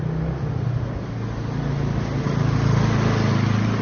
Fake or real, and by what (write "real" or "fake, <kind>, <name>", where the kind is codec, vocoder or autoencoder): real